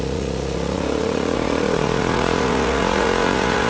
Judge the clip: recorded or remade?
remade